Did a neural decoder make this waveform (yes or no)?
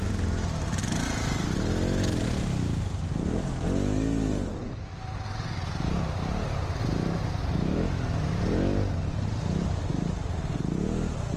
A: no